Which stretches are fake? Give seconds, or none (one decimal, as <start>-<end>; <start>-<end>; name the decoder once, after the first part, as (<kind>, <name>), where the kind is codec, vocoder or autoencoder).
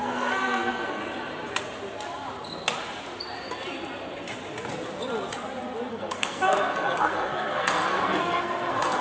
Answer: 0.0-1.0 (codec, SNAC); 5.9-9.0